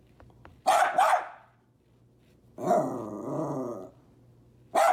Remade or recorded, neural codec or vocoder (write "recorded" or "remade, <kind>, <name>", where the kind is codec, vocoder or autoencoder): recorded